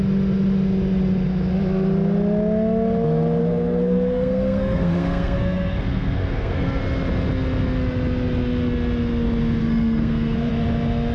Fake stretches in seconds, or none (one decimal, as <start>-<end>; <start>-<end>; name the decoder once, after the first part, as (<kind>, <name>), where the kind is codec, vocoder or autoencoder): 3.4-6.8 (codec, SNAC); 9.6-10.5